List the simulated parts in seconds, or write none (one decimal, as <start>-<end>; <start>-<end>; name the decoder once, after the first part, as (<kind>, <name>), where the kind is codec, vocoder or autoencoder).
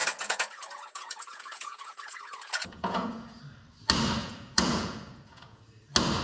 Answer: 0.0-3.4 (vocoder, Vocos); 4.2-5.6